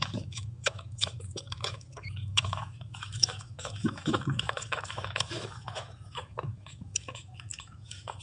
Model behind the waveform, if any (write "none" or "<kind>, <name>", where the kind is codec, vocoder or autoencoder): autoencoder, DAC-VAE